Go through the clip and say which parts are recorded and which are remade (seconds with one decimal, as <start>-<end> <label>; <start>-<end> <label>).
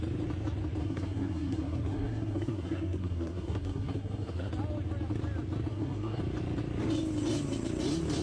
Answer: 0.0-0.8 recorded; 0.8-4.5 remade; 4.5-5.7 recorded; 5.7-6.2 remade; 6.2-8.2 recorded